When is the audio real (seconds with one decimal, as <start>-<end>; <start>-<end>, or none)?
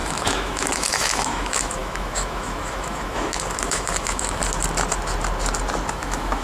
4.4-5.9